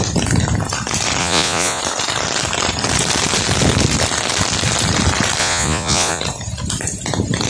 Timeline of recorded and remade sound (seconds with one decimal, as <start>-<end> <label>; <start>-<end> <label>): 0.0-1.2 recorded; 1.2-1.8 remade; 1.8-5.4 recorded; 5.4-6.2 remade; 6.2-7.5 recorded